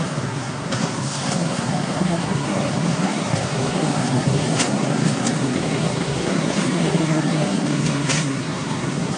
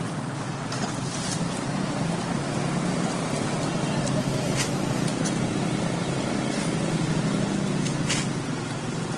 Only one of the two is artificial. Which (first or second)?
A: first